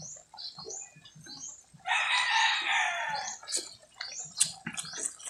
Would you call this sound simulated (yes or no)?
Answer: no